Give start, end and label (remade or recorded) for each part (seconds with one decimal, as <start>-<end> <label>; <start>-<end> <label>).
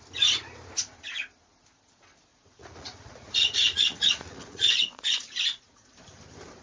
0.0-2.3 recorded; 2.3-5.9 remade; 5.9-6.6 recorded